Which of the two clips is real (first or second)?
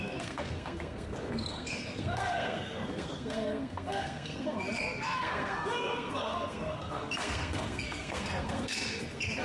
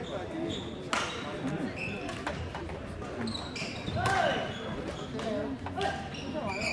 second